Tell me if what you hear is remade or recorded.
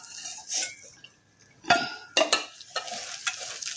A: recorded